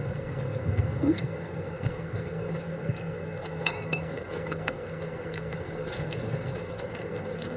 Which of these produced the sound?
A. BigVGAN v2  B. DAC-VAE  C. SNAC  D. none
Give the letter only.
C